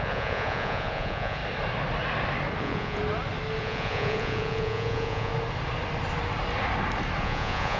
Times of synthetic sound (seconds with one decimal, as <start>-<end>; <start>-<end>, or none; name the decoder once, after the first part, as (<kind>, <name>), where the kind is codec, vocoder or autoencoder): 0.0-1.4 (vocoder, Vocos); 2.6-3.0; 3.6-5.3; 7.2-7.8